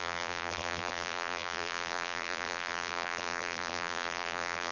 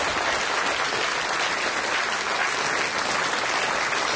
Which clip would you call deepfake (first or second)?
first